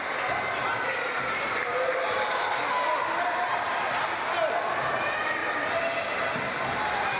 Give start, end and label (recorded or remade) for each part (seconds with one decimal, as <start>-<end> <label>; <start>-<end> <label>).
0.0-5.4 recorded; 5.4-6.6 remade; 6.6-7.2 recorded